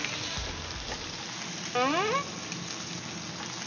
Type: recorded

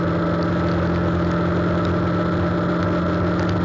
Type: recorded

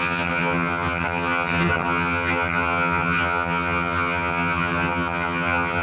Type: remade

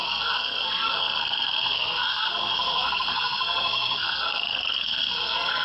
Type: remade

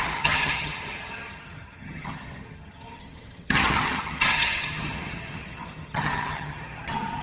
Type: remade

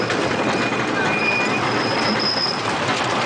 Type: recorded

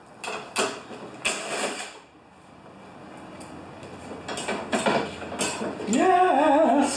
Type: recorded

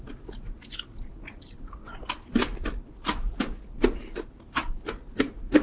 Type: recorded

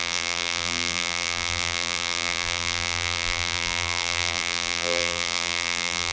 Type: remade